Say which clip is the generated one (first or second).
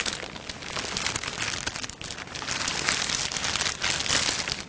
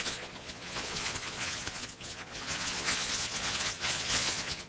second